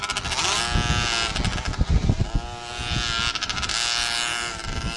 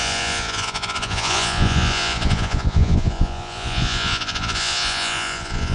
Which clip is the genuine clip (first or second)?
first